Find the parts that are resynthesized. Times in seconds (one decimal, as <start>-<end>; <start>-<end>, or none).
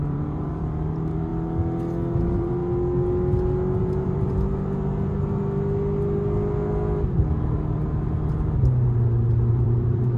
0.0-1.3; 2.2-2.6; 3.8-5.4; 9.5-10.2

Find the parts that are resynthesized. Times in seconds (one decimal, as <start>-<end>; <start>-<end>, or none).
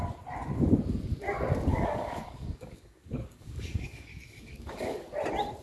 1.7-5.1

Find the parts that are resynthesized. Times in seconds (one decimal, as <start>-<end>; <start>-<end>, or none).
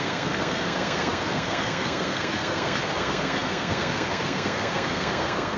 0.0-5.6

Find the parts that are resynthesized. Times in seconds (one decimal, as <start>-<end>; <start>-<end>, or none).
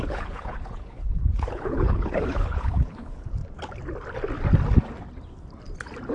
0.0-3.4